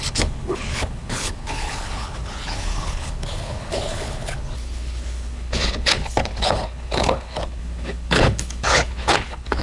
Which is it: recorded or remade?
remade